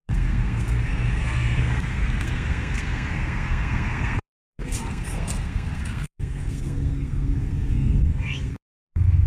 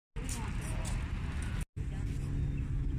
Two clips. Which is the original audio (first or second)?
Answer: second